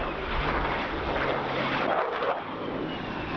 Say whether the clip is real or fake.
real